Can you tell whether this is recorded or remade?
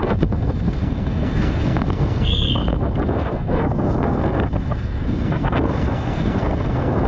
remade